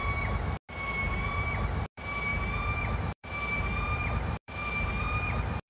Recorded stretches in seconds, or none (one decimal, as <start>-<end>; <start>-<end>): 0.0-1.3; 2.3-3.0